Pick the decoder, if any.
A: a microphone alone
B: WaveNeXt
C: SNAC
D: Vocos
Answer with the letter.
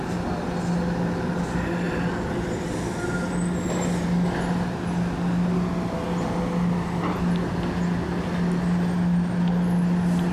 A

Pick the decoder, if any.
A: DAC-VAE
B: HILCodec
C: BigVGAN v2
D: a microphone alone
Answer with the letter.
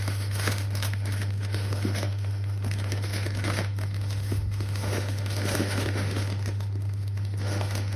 A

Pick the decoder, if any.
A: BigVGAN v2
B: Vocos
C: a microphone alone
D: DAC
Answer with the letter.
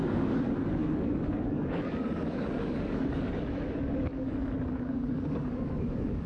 D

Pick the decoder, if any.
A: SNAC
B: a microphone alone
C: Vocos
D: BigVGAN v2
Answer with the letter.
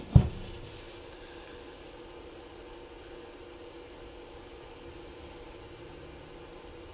B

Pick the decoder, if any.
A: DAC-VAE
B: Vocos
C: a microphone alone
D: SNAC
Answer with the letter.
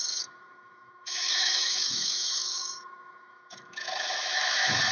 A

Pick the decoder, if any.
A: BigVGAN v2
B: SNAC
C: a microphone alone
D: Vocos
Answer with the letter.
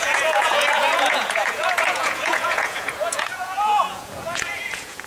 D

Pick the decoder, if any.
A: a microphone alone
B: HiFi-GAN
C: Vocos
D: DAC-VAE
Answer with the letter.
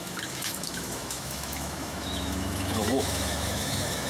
D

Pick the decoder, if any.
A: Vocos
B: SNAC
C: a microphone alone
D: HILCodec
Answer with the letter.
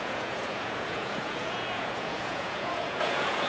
A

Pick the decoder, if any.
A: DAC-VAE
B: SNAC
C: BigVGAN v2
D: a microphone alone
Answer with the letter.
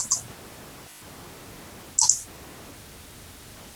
D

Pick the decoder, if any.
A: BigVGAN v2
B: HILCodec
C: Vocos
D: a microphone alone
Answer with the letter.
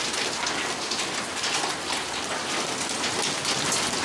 D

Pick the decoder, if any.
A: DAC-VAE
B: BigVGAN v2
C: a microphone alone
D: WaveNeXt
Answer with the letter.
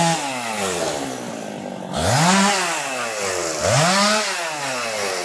C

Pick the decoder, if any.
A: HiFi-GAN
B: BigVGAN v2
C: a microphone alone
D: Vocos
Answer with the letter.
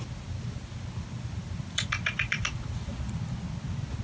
C